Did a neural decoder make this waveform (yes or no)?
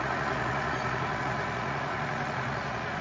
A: yes